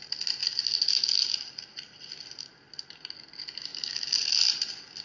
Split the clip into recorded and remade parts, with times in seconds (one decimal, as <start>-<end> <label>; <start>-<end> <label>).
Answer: 0.0-5.0 recorded